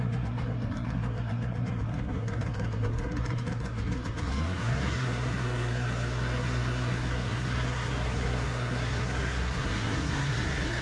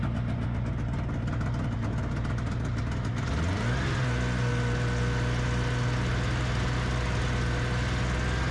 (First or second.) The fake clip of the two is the first